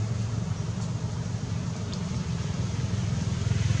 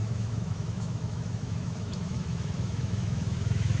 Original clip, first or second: first